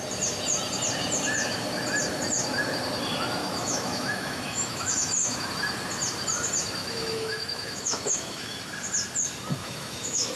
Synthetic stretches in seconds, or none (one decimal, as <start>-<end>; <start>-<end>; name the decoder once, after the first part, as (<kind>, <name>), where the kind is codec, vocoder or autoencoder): 3.4-5.5 (autoencoder, DAC-VAE); 6.8-8.6; 9.6-10.4

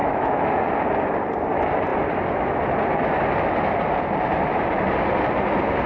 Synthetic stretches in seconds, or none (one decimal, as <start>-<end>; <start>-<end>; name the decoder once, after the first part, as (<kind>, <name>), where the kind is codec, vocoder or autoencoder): 0.0-0.6 (autoencoder, DAC-VAE)

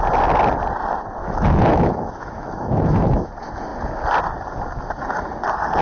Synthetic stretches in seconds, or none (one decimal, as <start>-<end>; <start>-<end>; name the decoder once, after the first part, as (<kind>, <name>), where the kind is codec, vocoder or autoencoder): 1.2-3.3 (autoencoder, DAC-VAE)